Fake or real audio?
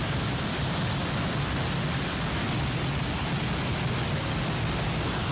real